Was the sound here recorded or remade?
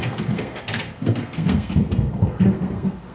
remade